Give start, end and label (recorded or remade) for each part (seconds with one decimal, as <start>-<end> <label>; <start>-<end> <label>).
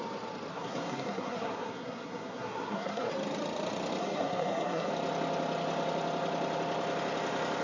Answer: 0.0-0.5 recorded; 0.5-3.1 remade; 3.1-4.0 recorded; 4.0-4.9 remade; 4.9-7.6 recorded